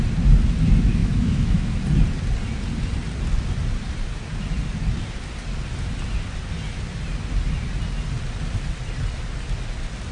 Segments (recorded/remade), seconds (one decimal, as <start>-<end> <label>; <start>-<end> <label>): 0.0-1.0 recorded; 1.0-1.8 remade; 1.8-10.1 recorded